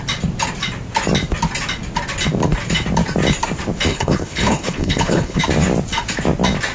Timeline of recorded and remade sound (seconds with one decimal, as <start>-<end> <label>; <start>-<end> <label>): 0.0-3.9 recorded; 3.9-5.4 remade; 5.4-6.7 recorded